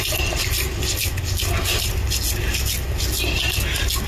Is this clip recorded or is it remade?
recorded